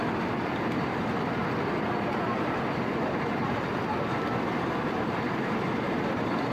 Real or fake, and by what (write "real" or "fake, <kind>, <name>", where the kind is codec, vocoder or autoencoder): real